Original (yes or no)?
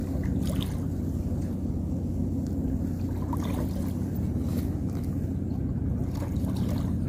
yes